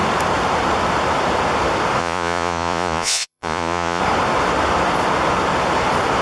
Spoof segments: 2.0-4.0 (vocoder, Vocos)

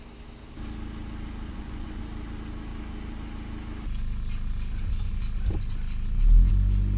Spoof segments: 1.5-2.0 (vocoder, Vocos)